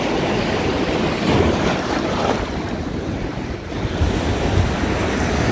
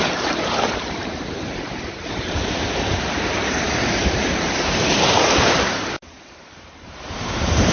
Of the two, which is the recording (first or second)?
first